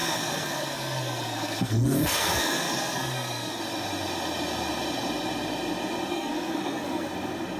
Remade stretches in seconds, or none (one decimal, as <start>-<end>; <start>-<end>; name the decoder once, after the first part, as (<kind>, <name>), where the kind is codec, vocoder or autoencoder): 0.0-3.6 (codec, SNAC); 6.1-7.1